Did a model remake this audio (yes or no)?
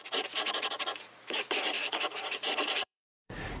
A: yes